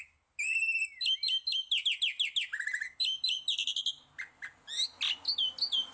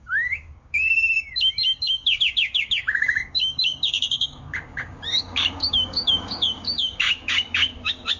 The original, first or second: first